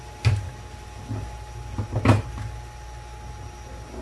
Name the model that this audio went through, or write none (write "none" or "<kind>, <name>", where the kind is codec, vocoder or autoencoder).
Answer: none